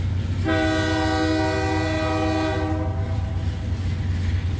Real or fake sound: real